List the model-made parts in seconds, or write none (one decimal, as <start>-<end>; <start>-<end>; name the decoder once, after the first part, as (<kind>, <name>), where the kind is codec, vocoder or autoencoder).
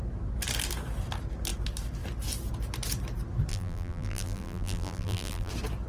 3.5-5.5 (vocoder, BigVGAN v2)